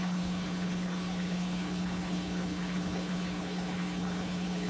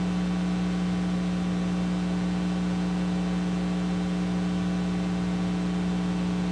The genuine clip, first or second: second